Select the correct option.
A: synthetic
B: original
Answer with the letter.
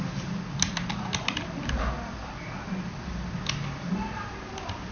B